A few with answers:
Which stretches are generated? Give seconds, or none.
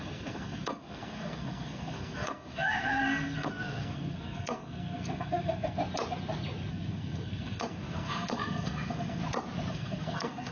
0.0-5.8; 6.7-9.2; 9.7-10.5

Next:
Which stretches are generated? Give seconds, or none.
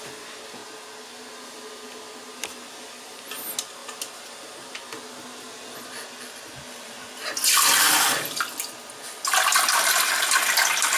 none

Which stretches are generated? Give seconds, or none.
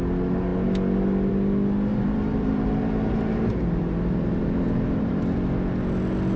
1.9-5.2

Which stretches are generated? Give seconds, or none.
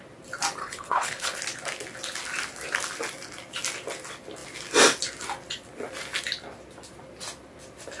0.6-1.4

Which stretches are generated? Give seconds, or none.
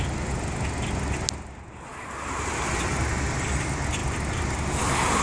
none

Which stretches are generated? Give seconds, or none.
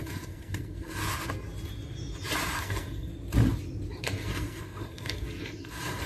0.0-1.0; 2.6-3.1; 4.0-6.1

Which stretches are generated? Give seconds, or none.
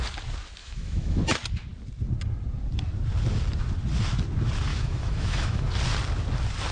0.6-1.2; 4.7-5.7